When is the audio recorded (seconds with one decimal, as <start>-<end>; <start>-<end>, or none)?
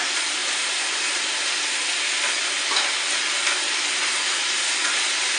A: 0.0-5.4